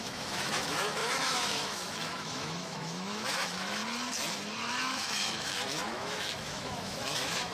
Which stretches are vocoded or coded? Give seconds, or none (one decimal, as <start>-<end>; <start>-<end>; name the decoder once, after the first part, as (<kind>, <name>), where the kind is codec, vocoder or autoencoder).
0.0-3.8 (autoencoder, DAC-VAE); 4.7-7.5

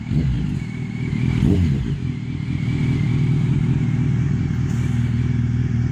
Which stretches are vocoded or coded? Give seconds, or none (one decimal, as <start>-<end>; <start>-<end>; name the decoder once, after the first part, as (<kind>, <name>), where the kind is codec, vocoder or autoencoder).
none

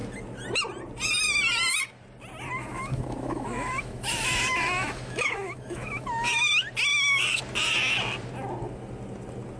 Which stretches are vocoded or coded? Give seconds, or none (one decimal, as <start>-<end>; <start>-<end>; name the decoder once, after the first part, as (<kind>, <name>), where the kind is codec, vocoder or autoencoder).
2.6-6.5 (autoencoder, DAC-VAE); 6.9-7.4

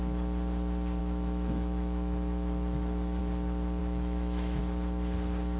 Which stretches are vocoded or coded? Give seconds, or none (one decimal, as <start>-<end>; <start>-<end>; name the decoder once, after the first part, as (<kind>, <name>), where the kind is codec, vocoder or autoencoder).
1.0-3.2 (autoencoder, DAC-VAE); 3.8-4.6

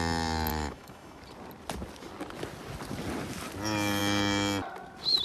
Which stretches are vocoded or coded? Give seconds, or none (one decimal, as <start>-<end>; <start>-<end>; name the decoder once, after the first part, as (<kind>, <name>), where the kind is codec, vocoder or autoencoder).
0.5-1.2 (autoencoder, DAC-VAE)

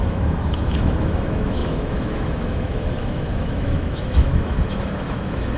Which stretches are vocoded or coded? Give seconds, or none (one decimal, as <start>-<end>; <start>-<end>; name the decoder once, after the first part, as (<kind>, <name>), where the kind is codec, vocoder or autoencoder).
0.0-5.6 (autoencoder, DAC-VAE)

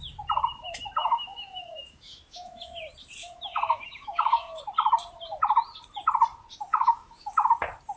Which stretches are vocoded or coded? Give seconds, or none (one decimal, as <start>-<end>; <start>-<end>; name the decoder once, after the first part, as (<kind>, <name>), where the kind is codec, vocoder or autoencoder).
1.0-2.8 (autoencoder, DAC-VAE); 3.2-4.6; 6.7-7.5

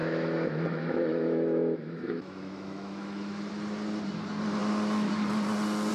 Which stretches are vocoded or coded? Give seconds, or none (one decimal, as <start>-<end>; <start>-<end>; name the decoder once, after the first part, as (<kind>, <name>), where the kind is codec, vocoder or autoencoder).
0.0-3.5 (autoencoder, DAC-VAE)